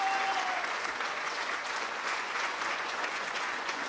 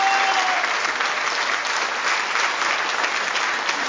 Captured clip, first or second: second